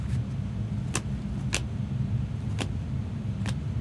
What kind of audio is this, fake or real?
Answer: real